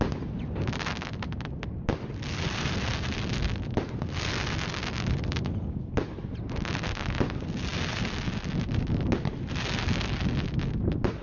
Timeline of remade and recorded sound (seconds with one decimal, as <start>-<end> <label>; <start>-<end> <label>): 0.0-11.2 recorded